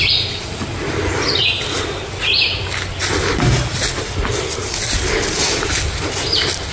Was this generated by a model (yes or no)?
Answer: no